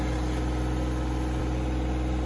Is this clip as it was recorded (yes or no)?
yes